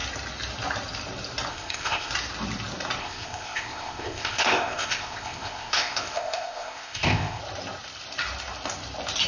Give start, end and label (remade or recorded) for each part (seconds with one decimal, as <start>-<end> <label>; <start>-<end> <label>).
0.0-1.5 recorded; 1.5-2.1 remade; 2.1-3.0 recorded; 3.0-7.4 remade; 7.4-9.3 recorded